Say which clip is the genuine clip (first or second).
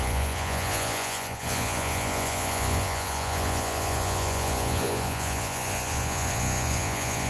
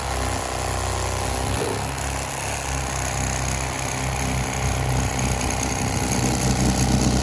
second